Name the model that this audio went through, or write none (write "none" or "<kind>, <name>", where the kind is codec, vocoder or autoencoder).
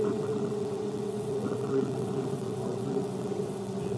vocoder, WaveNeXt